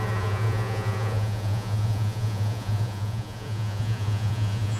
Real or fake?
fake